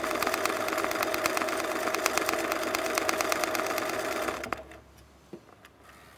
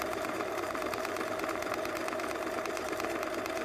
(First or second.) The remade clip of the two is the second